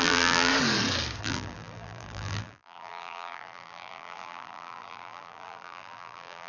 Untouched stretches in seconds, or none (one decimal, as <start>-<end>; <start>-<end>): 0.5-1.2